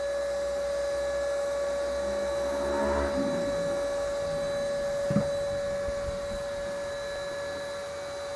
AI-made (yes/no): no